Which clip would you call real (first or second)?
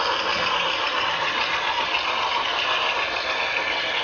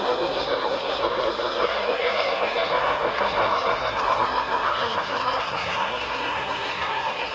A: first